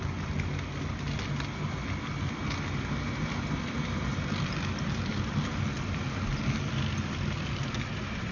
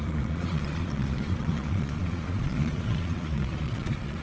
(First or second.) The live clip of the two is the first